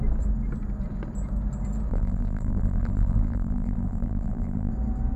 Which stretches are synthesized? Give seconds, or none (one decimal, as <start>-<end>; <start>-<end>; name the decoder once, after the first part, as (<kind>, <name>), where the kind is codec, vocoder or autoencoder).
1.9-4.7 (vocoder, BigVGAN v2)